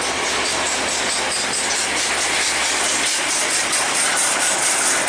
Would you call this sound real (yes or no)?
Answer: yes